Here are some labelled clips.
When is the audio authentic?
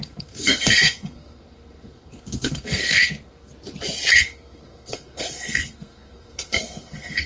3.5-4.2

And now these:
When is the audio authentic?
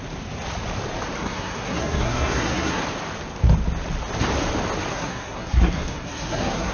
0.0-1.2; 2.8-4.9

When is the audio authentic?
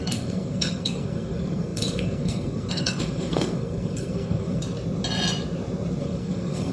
4.6-6.0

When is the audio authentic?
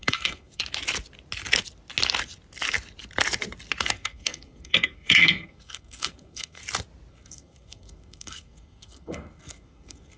0.6-3.8; 6.6-7.1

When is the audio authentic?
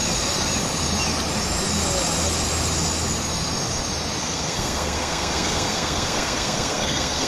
0.0-4.2